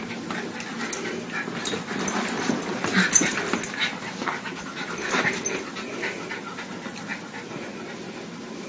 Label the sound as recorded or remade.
recorded